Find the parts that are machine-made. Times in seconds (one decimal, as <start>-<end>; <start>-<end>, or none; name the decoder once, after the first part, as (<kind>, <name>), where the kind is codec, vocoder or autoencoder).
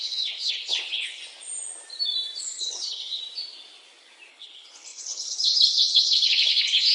0.0-1.2 (codec, HILCodec); 2.4-3.2; 4.3-6.9